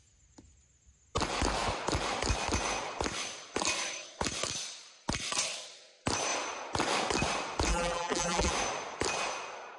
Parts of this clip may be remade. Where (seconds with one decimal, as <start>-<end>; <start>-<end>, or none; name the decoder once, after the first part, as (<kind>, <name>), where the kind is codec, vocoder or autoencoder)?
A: 7.7-8.5 (vocoder, BigVGAN v2)